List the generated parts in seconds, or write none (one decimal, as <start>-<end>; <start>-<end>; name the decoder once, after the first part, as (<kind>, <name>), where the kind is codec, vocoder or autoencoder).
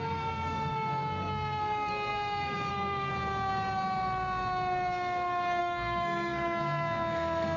0.0-3.1 (codec, SNAC); 5.6-7.6